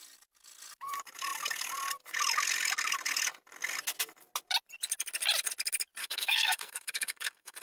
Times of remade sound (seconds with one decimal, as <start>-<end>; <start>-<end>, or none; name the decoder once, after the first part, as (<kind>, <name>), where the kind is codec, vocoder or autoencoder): 6.0-7.6 (codec, SNAC)